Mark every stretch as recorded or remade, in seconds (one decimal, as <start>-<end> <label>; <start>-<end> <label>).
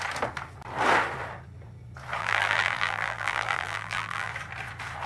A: 0.0-2.2 recorded; 2.2-4.3 remade; 4.3-5.1 recorded